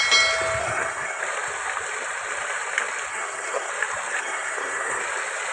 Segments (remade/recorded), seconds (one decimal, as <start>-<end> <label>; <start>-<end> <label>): 0.0-0.6 recorded; 0.6-1.2 remade; 1.2-3.1 recorded; 3.1-3.7 remade; 3.7-4.2 recorded; 4.2-5.0 remade; 5.0-5.5 recorded